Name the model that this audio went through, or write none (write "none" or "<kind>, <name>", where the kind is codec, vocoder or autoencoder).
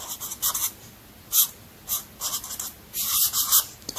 none